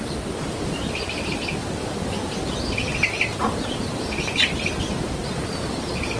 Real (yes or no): yes